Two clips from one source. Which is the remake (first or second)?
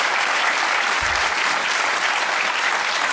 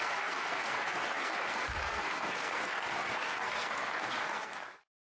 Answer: second